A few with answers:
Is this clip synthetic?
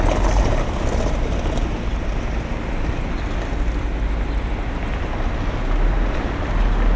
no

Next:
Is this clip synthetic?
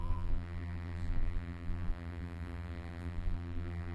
yes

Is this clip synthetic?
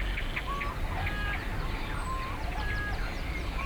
no